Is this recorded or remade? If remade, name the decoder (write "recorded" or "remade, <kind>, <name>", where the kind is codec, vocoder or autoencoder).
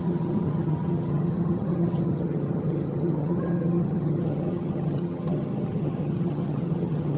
remade, vocoder, HiFi-GAN